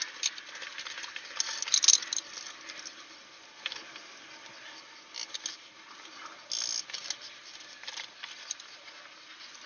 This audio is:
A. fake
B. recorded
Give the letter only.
B